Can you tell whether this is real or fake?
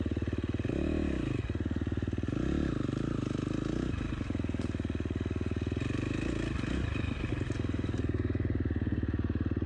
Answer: real